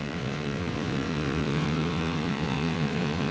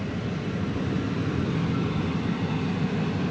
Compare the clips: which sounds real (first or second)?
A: second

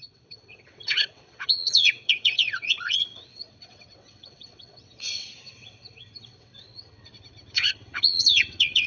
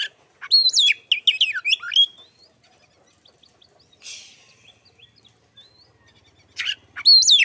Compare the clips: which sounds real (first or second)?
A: second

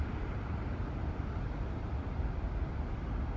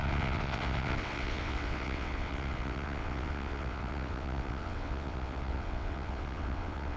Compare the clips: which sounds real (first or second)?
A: first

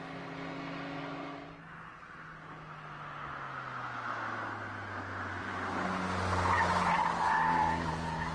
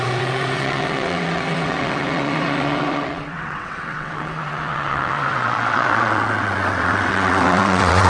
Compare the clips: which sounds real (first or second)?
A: first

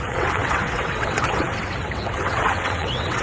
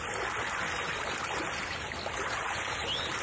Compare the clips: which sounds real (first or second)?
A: second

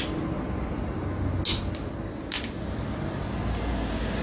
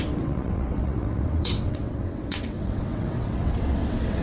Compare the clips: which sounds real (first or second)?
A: first